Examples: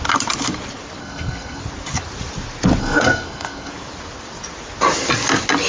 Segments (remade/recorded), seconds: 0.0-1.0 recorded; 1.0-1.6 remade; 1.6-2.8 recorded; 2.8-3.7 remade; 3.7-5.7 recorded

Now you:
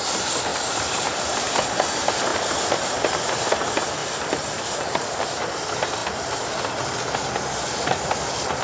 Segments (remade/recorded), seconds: 0.0-0.5 recorded; 0.5-1.5 remade; 1.5-2.3 recorded; 2.3-3.3 remade; 3.3-4.0 recorded; 4.0-4.6 remade; 4.6-8.6 recorded

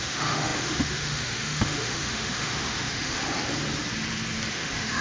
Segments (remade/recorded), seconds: 0.0-3.2 remade; 3.2-4.5 recorded; 4.5-5.0 remade

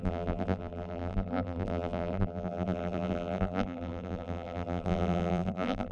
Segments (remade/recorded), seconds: 0.0-5.9 remade

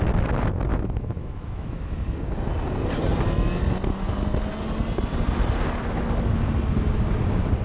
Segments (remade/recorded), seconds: 0.0-0.7 recorded; 0.7-1.8 remade; 1.8-7.6 recorded

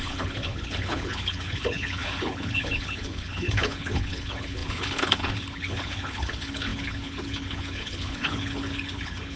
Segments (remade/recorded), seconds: 0.0-9.4 remade